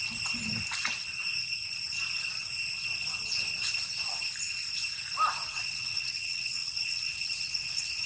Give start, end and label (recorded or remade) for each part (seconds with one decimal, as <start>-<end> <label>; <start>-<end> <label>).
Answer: 0.0-5.5 recorded; 5.5-8.1 remade